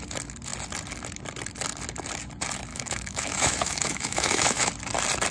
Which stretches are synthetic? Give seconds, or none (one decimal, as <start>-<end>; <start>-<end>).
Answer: 2.7-4.7